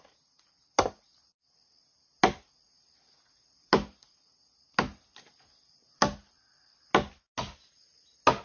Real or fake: real